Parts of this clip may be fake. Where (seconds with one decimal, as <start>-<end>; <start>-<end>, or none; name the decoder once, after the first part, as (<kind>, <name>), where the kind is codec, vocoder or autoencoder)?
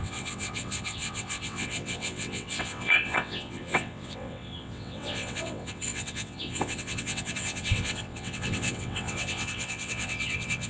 0.0-10.7 (vocoder, WaveNeXt)